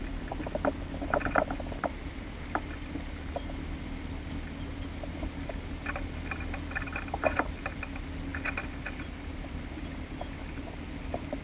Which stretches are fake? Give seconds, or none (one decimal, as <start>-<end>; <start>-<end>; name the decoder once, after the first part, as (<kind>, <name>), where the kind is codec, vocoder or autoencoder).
none